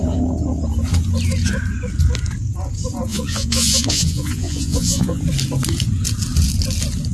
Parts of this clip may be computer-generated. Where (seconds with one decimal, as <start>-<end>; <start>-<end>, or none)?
3.1-5.2